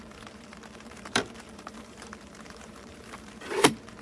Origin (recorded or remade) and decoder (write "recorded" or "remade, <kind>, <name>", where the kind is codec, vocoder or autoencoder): remade, vocoder, BigVGAN v2